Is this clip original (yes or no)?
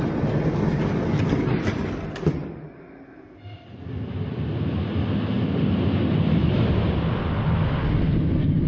yes